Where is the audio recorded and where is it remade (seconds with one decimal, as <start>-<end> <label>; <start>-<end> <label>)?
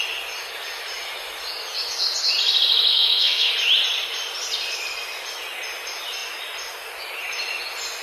0.0-2.9 recorded; 2.9-3.5 remade; 3.5-8.0 recorded